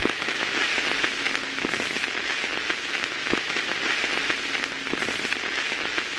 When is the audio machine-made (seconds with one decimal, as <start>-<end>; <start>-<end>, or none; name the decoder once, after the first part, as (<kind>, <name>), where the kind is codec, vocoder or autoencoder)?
0.0-0.7 (autoencoder, DAC-VAE); 1.2-3.7; 5.5-6.2